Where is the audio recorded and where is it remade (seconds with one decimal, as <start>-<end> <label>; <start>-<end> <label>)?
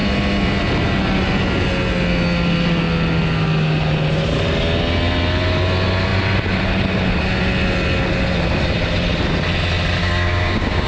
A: 0.0-10.0 recorded; 10.0-10.9 remade